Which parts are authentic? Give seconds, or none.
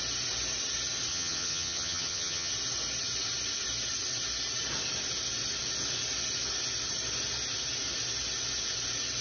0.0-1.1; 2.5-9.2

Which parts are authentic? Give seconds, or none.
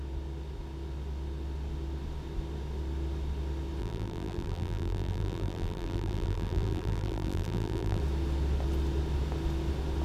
0.0-3.8; 8.0-10.0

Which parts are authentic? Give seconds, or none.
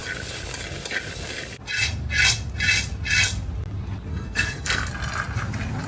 0.0-4.1; 4.9-5.9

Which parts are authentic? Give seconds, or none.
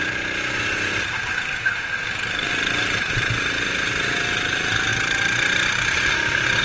0.0-6.6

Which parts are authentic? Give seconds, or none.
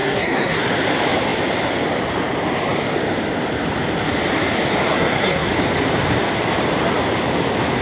0.6-4.9; 5.5-7.8